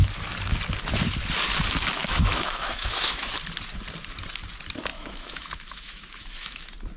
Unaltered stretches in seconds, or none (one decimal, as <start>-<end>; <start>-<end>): 0.0-2.0; 3.2-4.9; 6.6-7.0